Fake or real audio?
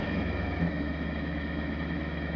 fake